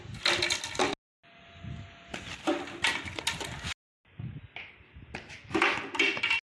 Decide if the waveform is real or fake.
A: real